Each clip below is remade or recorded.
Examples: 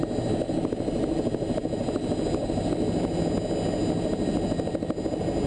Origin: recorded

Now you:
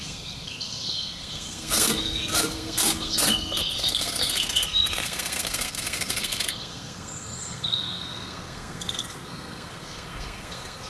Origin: remade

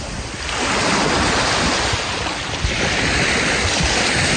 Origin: remade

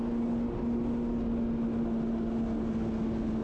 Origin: recorded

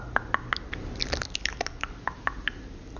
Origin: recorded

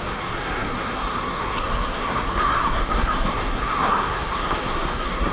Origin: remade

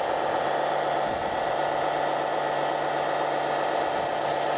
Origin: recorded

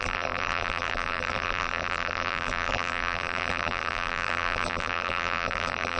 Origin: remade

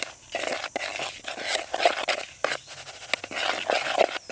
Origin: recorded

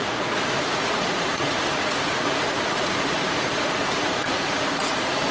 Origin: remade